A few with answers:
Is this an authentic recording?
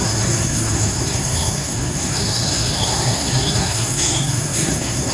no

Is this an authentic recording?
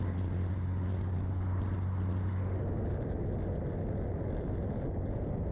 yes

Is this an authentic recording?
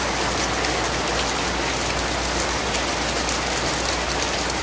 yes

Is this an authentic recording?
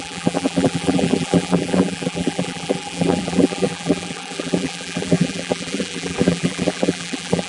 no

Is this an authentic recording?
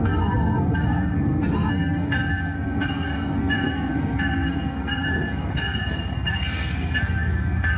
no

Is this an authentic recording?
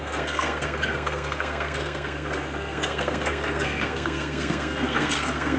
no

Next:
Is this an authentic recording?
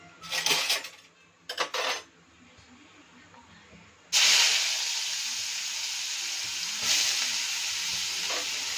yes